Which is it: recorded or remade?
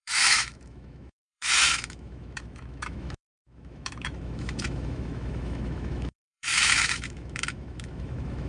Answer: remade